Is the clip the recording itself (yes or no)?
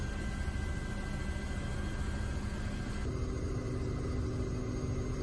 yes